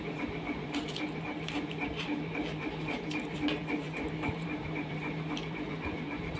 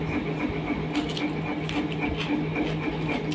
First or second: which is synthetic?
first